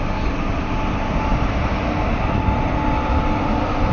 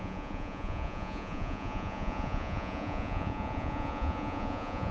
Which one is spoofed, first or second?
second